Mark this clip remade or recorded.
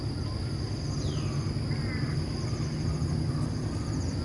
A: recorded